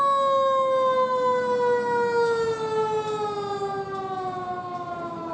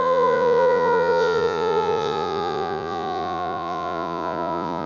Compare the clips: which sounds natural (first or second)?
first